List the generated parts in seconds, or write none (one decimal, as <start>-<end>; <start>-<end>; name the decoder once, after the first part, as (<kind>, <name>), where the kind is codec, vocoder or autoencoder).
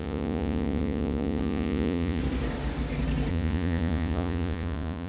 0.0-2.2 (vocoder, Vocos); 3.3-5.1